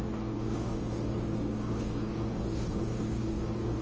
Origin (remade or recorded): remade